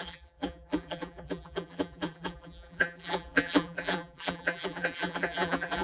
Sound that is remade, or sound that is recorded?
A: remade